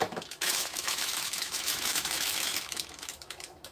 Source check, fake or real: fake